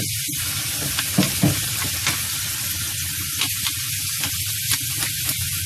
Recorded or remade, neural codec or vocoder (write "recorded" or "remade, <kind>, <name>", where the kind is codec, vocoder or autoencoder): recorded